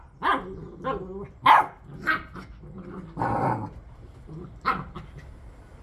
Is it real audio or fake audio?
real